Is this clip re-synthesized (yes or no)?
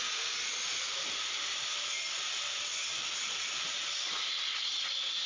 no